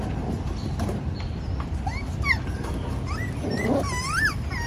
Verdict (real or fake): fake